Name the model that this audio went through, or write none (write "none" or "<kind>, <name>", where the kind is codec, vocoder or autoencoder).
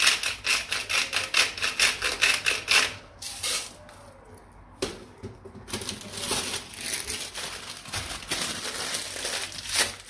none